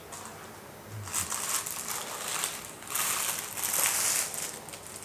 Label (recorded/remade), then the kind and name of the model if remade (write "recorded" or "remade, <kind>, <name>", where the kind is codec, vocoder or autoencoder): recorded